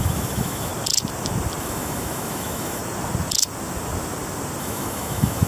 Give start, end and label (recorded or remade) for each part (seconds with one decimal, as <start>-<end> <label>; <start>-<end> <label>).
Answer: 0.0-0.7 remade; 0.7-1.6 recorded; 1.6-2.8 remade; 2.8-4.6 recorded; 4.6-5.5 remade